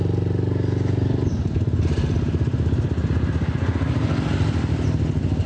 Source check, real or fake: real